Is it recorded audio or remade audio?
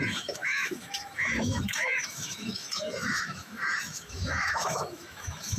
remade